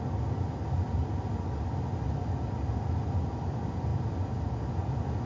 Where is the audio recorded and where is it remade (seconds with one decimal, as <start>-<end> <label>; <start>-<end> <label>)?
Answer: 0.0-5.3 recorded